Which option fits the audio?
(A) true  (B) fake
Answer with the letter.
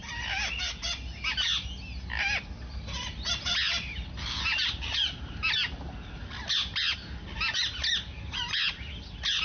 A